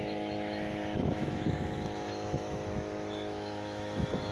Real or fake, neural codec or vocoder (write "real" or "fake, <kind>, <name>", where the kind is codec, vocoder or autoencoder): fake, autoencoder, DAC-VAE